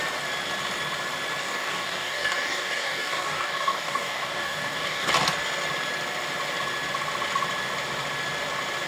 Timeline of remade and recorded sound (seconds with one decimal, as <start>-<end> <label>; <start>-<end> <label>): 0.0-1.4 recorded; 1.4-5.1 remade; 5.1-8.9 recorded